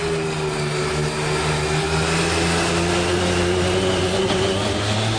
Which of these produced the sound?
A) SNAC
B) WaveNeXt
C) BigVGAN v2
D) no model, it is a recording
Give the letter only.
D